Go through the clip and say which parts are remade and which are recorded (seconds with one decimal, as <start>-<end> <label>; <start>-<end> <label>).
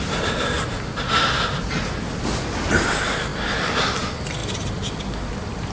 0.0-5.7 recorded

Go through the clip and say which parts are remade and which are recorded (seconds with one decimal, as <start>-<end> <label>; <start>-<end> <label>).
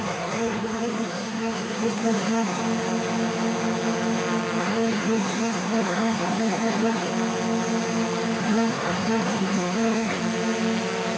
0.0-2.6 remade; 2.6-4.6 recorded; 4.6-7.1 remade; 7.1-8.4 recorded; 8.4-10.2 remade; 10.2-11.2 recorded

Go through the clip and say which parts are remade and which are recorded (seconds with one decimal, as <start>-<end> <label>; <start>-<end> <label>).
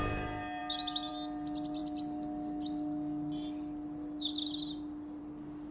0.0-5.7 recorded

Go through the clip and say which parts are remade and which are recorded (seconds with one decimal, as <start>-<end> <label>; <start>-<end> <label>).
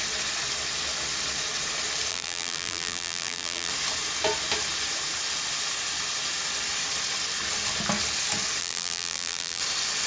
0.0-2.1 recorded; 2.1-3.7 remade; 3.7-8.6 recorded; 8.6-9.6 remade; 9.6-10.1 recorded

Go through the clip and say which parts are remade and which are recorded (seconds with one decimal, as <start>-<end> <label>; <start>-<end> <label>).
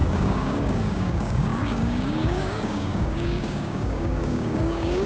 0.0-5.1 remade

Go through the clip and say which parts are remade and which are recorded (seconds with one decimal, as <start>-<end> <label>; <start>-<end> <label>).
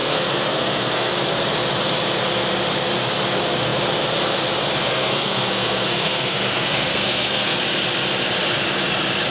0.0-1.1 remade; 1.1-4.9 recorded; 4.9-7.6 remade; 7.6-9.3 recorded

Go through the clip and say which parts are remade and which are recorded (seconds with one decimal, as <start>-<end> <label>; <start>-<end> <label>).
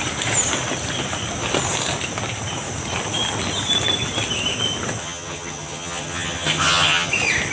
0.0-5.0 recorded; 5.0-7.1 remade; 7.1-7.5 recorded